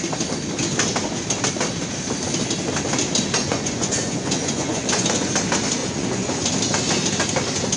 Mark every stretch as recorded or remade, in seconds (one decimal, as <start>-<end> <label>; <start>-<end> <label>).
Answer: 0.0-3.4 recorded; 3.4-5.3 remade; 5.3-5.8 recorded; 5.8-6.4 remade; 6.4-7.8 recorded